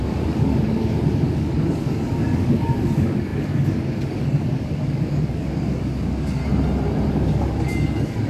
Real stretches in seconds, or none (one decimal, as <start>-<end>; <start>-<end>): 6.4-7.1